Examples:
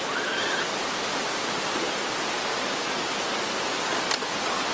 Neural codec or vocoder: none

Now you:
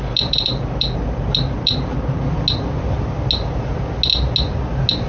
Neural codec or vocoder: none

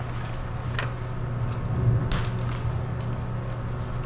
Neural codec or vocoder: none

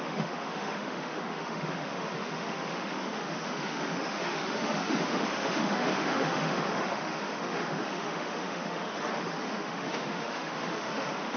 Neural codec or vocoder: autoencoder, DAC-VAE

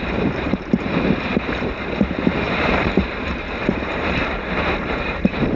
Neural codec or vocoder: vocoder, BigVGAN v2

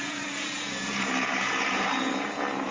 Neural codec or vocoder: vocoder, Vocos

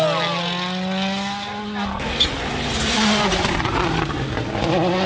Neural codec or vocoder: none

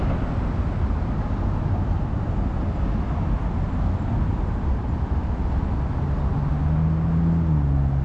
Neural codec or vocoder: none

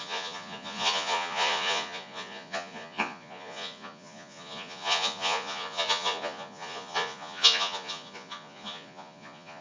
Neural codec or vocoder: vocoder, Vocos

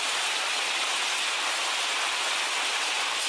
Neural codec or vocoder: none